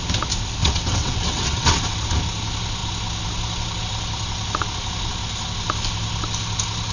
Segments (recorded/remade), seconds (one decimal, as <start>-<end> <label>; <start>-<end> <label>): 0.0-0.6 recorded; 0.6-1.8 remade; 1.8-6.9 recorded